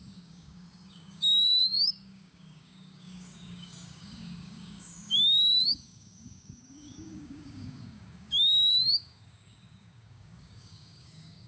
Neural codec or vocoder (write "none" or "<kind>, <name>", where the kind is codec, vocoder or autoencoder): codec, DAC